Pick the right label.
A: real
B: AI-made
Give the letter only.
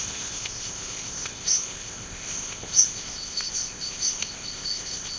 B